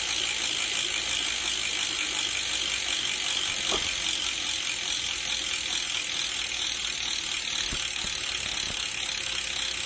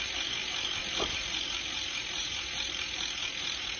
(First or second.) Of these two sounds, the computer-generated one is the second